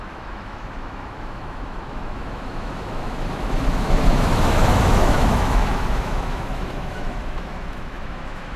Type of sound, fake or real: fake